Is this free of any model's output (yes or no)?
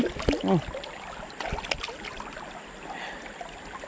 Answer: yes